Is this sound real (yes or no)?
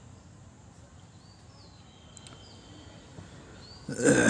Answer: yes